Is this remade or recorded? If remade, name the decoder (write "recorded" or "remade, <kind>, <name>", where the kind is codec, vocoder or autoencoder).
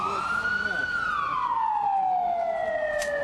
recorded